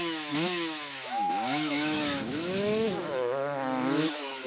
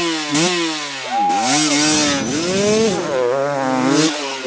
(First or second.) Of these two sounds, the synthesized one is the first